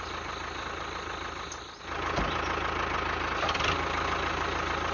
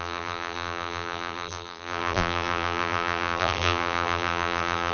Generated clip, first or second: second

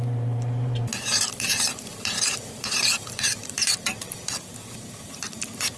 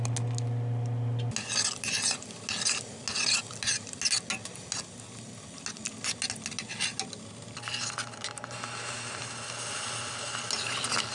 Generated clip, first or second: first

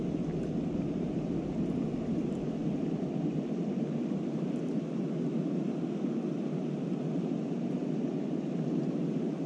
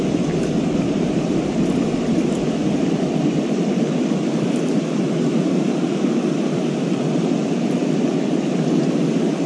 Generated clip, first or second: second